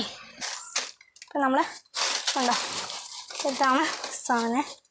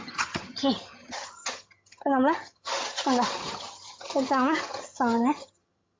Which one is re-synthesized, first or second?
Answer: second